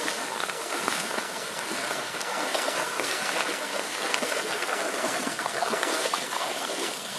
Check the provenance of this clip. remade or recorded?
remade